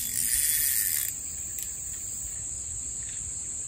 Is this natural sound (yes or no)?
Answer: yes